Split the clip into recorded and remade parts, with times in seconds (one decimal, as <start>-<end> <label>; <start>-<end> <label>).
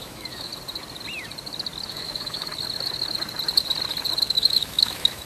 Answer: 0.0-0.5 remade; 0.5-1.9 recorded; 1.9-2.5 remade; 2.5-4.2 recorded; 4.2-5.3 remade